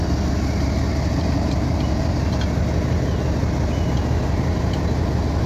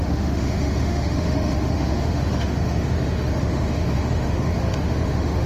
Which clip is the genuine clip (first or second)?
first